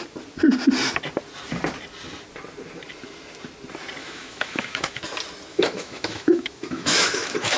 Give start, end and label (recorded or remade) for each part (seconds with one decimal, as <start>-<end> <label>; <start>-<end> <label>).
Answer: 0.0-4.0 recorded; 4.0-5.0 remade; 5.0-5.5 recorded; 5.5-7.6 remade